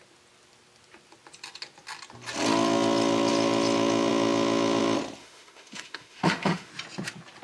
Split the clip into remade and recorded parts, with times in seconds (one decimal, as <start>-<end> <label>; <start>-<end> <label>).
0.0-5.2 recorded; 5.2-6.7 remade; 6.7-7.4 recorded